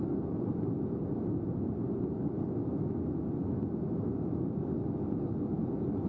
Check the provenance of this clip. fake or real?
real